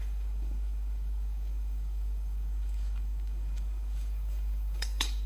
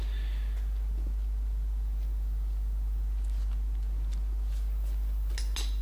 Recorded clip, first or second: second